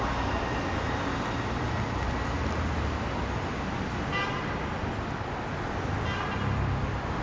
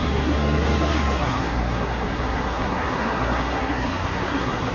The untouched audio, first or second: first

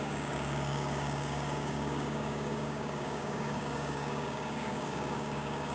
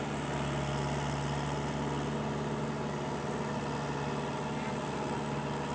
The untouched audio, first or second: second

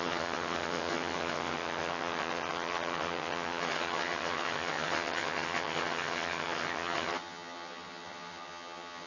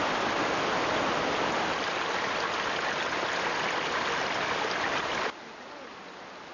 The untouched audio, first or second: second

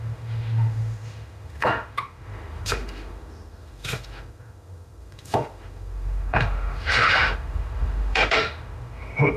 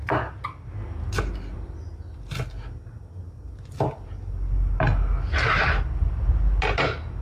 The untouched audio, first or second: second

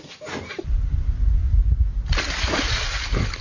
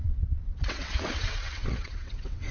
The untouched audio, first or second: first